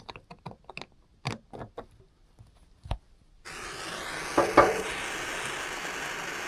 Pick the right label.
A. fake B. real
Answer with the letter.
B